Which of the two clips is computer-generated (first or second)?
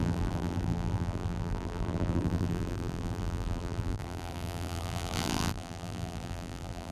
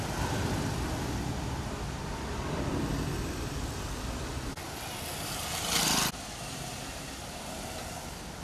first